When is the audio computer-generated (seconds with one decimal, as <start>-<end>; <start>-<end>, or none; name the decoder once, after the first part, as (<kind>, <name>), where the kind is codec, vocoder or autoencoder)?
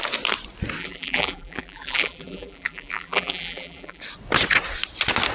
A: 0.8-4.0 (vocoder, BigVGAN v2)